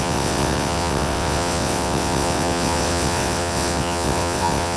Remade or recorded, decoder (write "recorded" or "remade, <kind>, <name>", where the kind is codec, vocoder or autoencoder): remade, vocoder, WaveNeXt